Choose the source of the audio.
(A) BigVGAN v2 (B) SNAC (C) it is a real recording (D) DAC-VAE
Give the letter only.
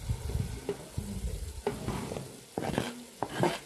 C